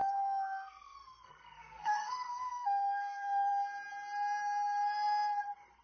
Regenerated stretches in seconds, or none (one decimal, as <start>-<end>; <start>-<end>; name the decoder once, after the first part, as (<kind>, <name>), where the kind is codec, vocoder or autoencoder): 0.0-3.5 (codec, SNAC)